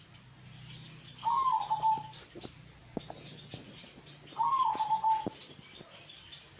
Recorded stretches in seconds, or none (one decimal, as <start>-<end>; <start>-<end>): 0.0-6.6